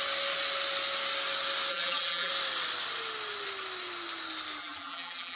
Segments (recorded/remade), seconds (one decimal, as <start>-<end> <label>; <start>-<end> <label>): 0.0-1.7 recorded; 1.7-2.3 remade; 2.3-4.6 recorded; 4.6-5.4 remade

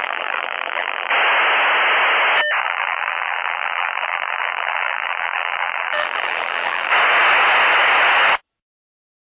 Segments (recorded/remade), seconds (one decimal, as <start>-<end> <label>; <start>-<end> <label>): 0.0-1.1 remade; 1.1-2.6 recorded; 2.6-6.9 remade; 6.9-9.4 recorded

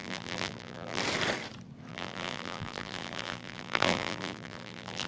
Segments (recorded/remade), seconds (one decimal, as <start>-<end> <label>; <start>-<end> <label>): 0.0-1.0 remade; 1.0-1.9 recorded; 1.9-5.1 remade